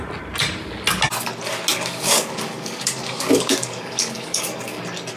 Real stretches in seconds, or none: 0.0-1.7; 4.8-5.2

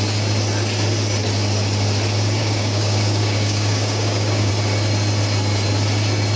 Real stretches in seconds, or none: 0.0-2.4; 4.5-6.4

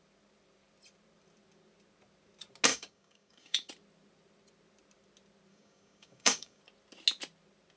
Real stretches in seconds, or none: 0.0-2.7; 3.7-5.5; 6.6-7.8

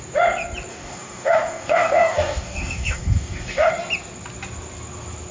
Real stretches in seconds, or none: 0.0-0.7; 3.7-5.3

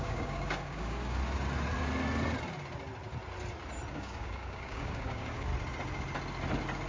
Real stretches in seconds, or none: 1.2-3.9; 5.5-6.9

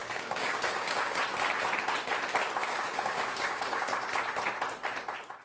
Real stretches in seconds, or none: 1.2-2.6; 3.8-5.4

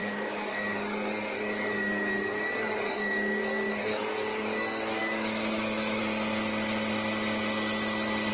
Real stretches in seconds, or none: 6.0-8.3

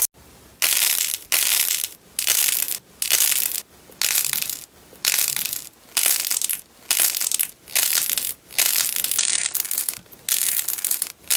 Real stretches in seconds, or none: 0.0-11.4